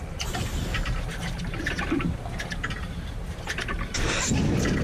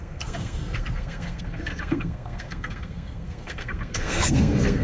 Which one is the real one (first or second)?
first